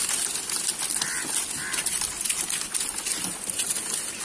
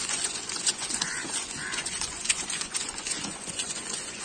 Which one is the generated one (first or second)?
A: second